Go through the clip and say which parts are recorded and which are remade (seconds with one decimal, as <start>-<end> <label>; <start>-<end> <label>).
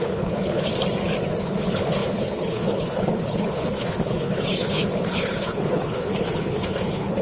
0.0-0.7 remade; 0.7-1.4 recorded; 1.4-7.2 remade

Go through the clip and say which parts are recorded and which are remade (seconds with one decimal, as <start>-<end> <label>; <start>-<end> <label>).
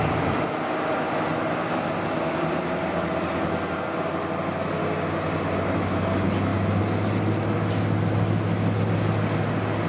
0.0-9.9 recorded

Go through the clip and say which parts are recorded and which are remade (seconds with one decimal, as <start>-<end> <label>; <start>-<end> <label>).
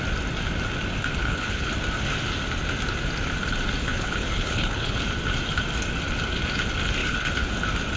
0.0-1.2 recorded; 1.2-1.7 remade; 1.7-3.8 recorded; 3.8-5.0 remade; 5.0-7.0 recorded; 7.0-7.5 remade; 7.5-8.0 recorded